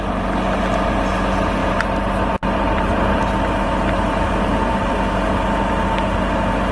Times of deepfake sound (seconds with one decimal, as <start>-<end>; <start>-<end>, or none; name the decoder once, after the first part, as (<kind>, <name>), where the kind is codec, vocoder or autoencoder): 1.6-4.9 (vocoder, BigVGAN v2)